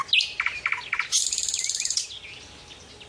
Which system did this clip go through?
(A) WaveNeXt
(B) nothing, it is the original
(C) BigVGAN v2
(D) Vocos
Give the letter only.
B